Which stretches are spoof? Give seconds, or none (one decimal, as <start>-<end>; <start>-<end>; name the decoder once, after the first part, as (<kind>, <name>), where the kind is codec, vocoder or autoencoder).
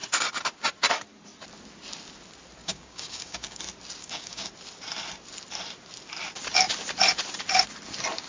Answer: 2.6-3.6 (codec, DAC); 4.0-4.5